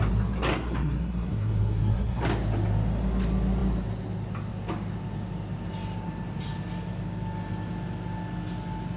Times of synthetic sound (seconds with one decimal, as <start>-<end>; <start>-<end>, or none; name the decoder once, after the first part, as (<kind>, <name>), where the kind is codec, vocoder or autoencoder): 0.5-2.2 (codec, SNAC)